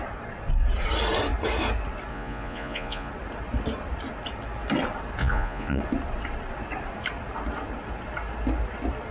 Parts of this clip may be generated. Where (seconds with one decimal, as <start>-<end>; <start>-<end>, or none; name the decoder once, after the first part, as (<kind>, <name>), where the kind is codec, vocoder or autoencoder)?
2.1-3.1 (vocoder, Vocos); 5.2-5.8